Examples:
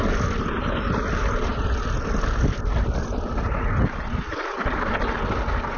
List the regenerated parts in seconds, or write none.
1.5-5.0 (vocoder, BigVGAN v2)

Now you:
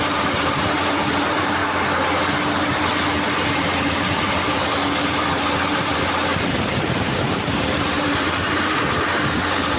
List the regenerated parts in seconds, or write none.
0.0-1.6 (vocoder, BigVGAN v2); 3.5-9.8

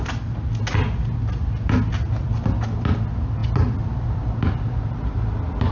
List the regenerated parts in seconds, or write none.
3.4-4.4 (vocoder, BigVGAN v2)

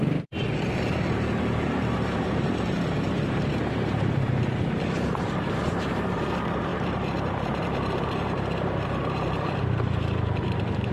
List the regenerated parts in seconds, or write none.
0.0-10.9 (vocoder, BigVGAN v2)

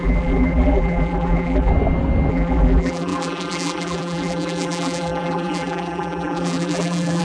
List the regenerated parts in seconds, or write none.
0.0-1.7 (vocoder, BigVGAN v2); 2.3-7.2